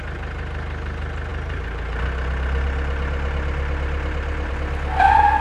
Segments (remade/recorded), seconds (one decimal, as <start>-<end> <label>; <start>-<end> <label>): 0.0-5.4 recorded